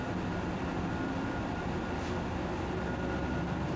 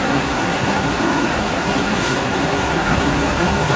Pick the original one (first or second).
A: first